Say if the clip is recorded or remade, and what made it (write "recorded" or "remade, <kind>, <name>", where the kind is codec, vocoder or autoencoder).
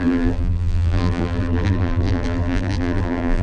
remade, vocoder, BigVGAN v2